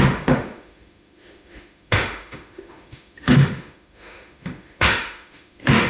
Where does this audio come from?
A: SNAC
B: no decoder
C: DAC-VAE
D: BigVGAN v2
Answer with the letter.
C